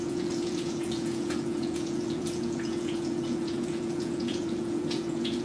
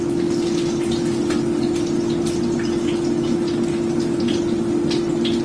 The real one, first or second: second